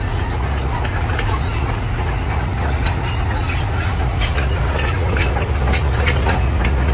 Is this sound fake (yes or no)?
yes